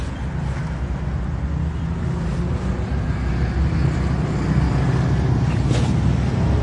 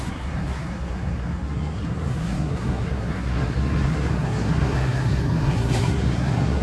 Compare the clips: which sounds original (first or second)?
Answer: first